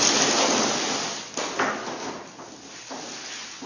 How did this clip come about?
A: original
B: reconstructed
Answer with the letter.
A